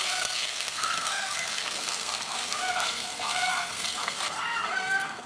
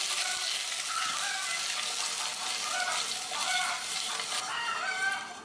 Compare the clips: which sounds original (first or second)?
second